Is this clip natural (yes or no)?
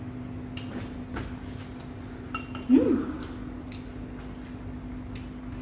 yes